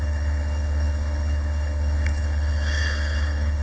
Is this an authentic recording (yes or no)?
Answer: no